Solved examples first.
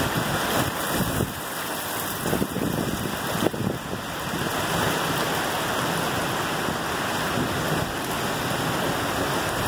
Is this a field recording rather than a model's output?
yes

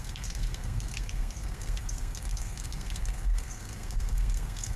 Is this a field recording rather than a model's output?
no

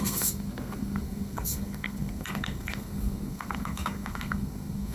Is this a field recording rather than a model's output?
no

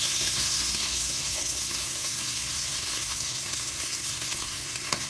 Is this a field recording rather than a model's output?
no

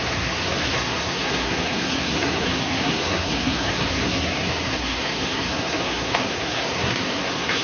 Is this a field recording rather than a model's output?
no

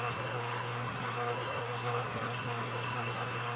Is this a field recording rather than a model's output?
no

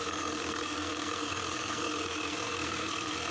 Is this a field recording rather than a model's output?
no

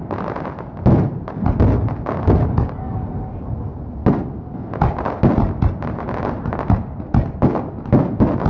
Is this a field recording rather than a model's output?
yes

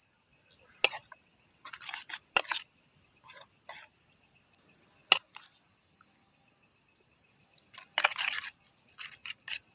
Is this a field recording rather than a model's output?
yes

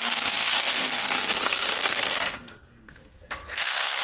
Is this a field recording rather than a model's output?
no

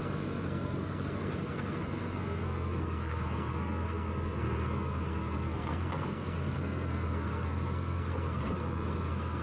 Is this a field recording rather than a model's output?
no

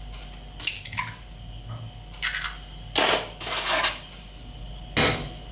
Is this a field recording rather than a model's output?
yes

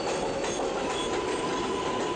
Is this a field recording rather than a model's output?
yes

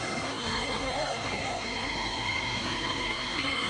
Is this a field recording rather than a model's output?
no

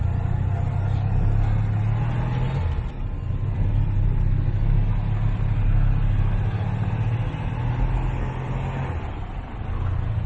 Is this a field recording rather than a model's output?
yes